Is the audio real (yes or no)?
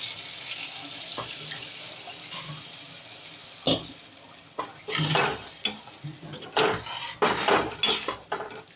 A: yes